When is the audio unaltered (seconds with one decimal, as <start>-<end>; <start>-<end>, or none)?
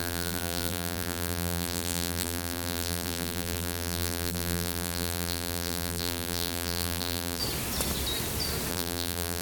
7.4-8.7